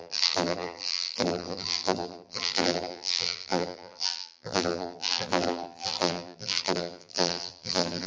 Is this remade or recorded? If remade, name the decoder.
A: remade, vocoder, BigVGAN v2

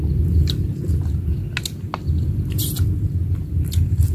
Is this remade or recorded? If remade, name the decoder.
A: recorded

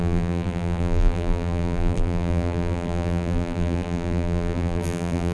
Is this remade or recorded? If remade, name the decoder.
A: remade, vocoder, BigVGAN v2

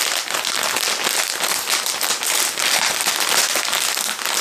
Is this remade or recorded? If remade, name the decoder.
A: recorded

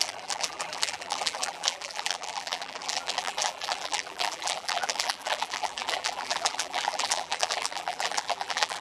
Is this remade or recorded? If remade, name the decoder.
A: remade, vocoder, BigVGAN v2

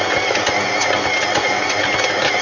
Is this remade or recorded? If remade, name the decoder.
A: recorded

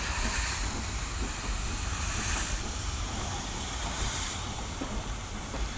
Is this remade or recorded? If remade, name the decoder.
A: remade, vocoder, BigVGAN v2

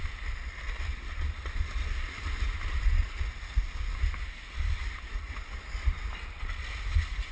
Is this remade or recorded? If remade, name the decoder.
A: recorded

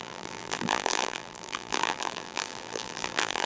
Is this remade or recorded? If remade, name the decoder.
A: remade, vocoder, BigVGAN v2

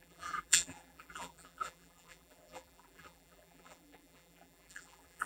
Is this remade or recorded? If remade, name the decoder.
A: remade, vocoder, BigVGAN v2